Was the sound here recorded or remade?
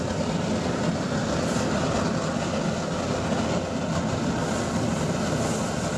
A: recorded